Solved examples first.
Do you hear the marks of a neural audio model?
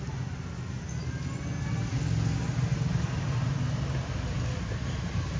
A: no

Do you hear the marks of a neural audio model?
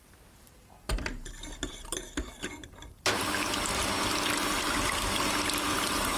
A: yes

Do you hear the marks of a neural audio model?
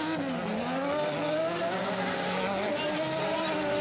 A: no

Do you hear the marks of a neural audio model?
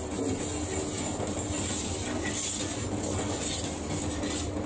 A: no